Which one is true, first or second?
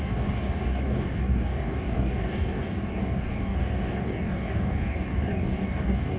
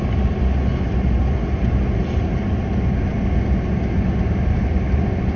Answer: second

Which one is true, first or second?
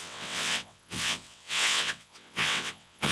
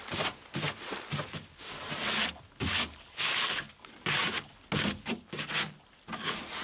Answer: second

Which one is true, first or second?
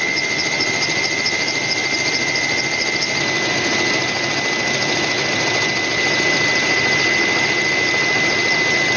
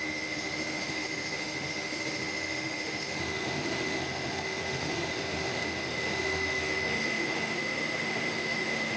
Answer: first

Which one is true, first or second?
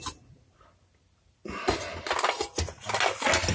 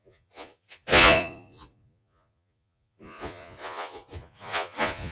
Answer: first